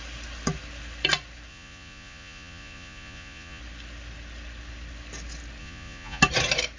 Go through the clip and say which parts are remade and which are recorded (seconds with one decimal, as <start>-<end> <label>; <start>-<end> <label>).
0.0-1.5 recorded; 1.5-3.6 remade; 3.6-5.6 recorded; 5.6-6.2 remade; 6.2-6.8 recorded

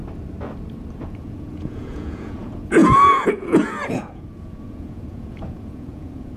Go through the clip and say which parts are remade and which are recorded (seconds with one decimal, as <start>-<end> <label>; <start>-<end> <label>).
0.0-1.0 recorded; 1.0-6.4 remade

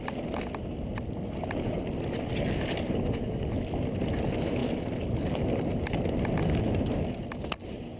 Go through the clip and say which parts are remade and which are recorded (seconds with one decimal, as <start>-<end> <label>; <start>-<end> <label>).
0.0-8.0 recorded

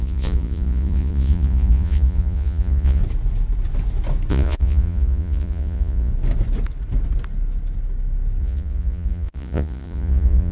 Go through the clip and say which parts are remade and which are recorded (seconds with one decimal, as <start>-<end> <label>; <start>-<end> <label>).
0.0-3.0 remade; 3.0-4.3 recorded; 4.3-6.1 remade; 6.1-8.4 recorded; 8.4-10.5 remade

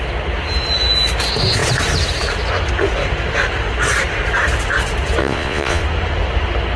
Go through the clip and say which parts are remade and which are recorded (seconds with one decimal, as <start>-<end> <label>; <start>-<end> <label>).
0.0-5.2 recorded; 5.2-5.8 remade; 5.8-6.8 recorded